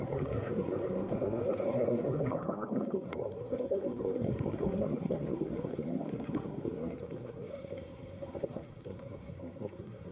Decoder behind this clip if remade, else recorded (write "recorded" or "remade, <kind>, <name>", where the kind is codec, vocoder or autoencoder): remade, codec, SNAC